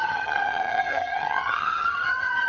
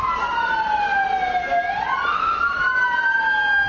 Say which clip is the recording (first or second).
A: second